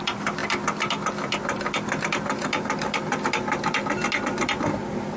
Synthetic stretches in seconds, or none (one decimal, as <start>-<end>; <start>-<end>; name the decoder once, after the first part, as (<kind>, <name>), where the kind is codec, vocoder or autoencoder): none

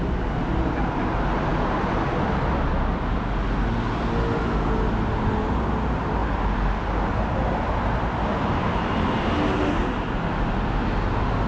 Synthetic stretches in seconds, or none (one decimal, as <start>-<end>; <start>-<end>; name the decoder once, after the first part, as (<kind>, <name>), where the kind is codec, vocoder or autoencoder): none

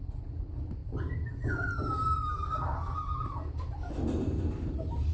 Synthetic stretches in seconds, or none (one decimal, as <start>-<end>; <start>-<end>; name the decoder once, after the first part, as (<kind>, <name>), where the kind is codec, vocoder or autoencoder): none

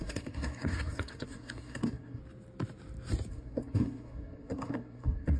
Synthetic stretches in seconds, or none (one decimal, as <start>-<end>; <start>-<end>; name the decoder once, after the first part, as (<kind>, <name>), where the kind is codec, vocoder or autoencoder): 0.0-2.2 (codec, SNAC); 3.3-5.4

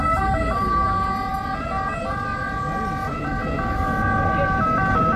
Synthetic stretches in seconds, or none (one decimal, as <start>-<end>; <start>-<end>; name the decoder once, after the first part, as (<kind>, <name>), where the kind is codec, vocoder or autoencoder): none

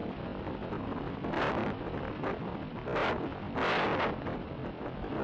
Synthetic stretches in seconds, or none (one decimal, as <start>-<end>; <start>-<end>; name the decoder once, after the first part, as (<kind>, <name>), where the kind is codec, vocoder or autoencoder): none

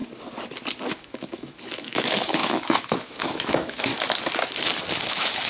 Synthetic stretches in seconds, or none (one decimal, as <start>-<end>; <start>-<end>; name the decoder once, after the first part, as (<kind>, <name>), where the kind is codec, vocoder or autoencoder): 1.0-3.9 (autoencoder, DAC-VAE); 5.1-5.5

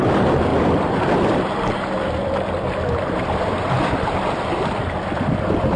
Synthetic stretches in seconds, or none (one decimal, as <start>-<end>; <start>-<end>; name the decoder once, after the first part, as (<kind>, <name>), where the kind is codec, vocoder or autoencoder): 0.0-0.5 (vocoder, BigVGAN v2); 1.0-5.8